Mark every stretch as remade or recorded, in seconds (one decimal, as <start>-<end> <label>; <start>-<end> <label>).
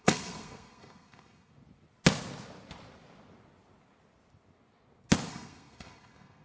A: 0.0-1.5 remade; 1.5-5.3 recorded; 5.3-6.4 remade